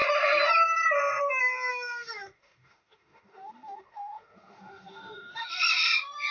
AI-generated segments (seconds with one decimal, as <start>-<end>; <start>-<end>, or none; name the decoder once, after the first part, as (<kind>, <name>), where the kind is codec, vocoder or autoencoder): 1.7-5.5 (autoencoder, DAC-VAE)